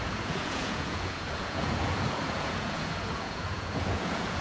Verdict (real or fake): fake